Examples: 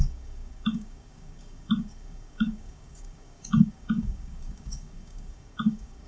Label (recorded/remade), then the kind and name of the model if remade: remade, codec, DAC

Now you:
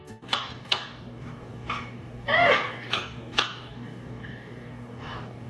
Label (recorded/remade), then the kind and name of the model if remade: remade, codec, DAC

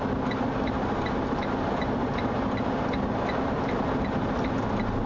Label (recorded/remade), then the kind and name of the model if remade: recorded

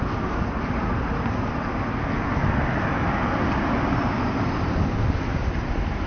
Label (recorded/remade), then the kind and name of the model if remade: recorded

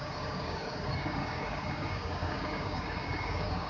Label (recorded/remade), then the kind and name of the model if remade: remade, codec, DAC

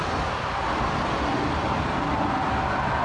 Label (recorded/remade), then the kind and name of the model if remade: recorded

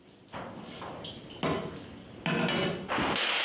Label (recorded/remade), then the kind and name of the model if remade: recorded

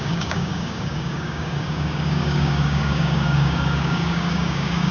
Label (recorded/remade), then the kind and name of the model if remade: remade, codec, DAC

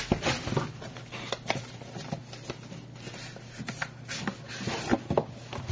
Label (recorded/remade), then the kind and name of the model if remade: recorded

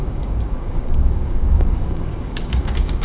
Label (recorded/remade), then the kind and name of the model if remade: remade, codec, DAC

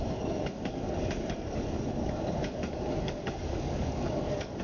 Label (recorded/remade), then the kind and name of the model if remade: remade, codec, DAC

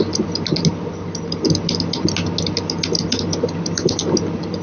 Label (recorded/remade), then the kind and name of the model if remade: recorded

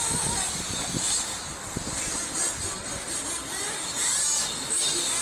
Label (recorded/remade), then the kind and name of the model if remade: recorded